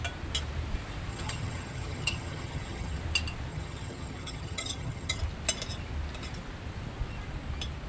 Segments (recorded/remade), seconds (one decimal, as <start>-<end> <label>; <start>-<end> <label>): 0.0-1.1 recorded; 1.1-3.0 remade; 3.0-3.5 recorded; 3.5-5.2 remade; 5.2-7.9 recorded